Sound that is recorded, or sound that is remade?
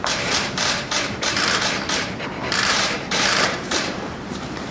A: remade